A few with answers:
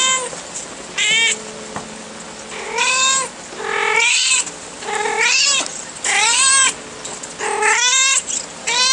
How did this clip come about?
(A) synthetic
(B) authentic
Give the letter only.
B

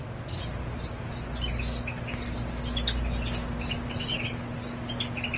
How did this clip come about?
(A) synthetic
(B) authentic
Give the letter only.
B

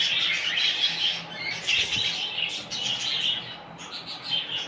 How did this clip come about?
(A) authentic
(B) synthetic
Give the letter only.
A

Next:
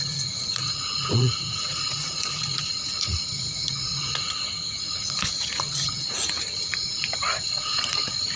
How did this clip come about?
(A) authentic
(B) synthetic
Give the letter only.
B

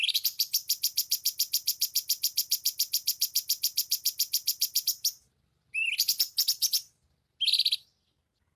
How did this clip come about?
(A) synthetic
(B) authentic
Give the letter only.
B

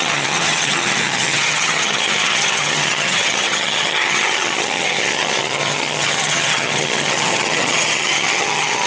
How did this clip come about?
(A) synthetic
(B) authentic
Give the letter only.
A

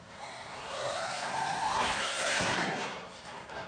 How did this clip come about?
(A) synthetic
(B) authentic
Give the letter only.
A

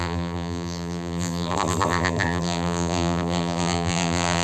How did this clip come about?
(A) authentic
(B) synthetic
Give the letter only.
B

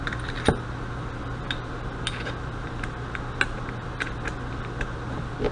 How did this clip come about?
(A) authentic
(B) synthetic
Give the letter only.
A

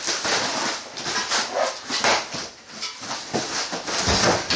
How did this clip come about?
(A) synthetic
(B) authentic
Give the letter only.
B